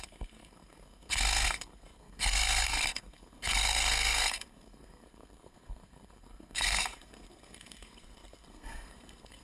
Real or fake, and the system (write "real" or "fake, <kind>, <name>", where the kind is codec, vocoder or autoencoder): fake, codec, SNAC